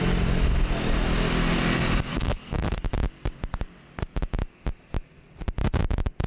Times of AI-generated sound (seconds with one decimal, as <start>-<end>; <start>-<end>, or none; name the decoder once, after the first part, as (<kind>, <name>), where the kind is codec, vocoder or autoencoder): 2.1-2.8 (codec, SNAC)